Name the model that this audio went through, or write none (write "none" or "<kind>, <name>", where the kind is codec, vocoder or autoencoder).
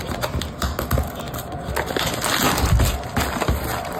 none